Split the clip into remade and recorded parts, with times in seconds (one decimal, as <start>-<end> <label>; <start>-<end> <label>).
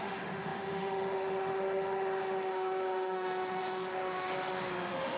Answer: 0.0-5.2 remade